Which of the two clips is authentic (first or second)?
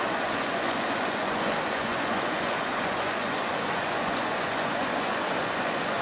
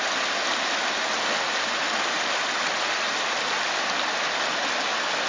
second